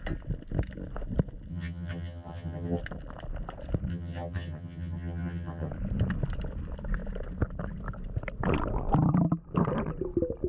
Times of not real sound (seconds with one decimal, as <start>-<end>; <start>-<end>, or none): 1.5-2.8; 3.9-5.7